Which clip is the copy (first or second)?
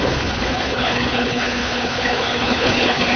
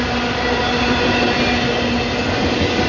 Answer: first